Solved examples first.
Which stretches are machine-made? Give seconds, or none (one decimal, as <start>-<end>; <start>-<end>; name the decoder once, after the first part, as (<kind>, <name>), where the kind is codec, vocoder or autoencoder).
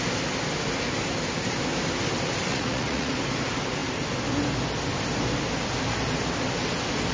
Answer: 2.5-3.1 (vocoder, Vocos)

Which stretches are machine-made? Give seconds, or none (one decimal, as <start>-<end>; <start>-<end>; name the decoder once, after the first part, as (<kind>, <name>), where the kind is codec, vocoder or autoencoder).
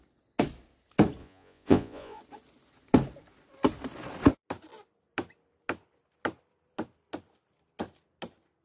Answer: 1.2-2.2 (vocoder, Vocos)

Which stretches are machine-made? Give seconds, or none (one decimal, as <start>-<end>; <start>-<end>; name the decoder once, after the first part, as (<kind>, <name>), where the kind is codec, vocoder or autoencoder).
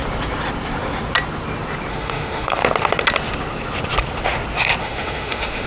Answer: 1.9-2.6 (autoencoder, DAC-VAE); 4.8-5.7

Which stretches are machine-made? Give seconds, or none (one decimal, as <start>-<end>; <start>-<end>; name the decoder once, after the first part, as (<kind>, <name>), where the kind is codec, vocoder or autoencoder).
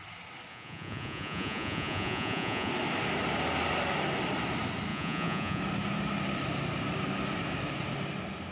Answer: 0.5-2.7 (vocoder, Vocos); 4.9-5.6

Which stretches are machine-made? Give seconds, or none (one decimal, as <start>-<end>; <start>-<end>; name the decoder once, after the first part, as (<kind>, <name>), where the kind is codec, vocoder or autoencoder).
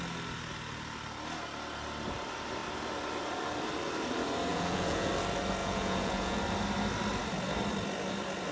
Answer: 4.5-5.1 (vocoder, Vocos); 5.6-6.4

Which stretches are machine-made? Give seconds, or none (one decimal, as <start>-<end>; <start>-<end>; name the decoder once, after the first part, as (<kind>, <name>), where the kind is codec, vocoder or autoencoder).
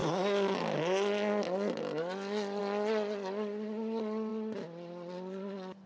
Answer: none